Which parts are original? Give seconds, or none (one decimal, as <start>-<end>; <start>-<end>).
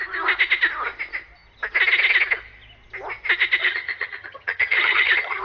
0.0-3.6